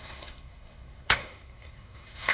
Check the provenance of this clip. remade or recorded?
remade